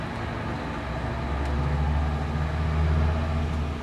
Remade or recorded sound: recorded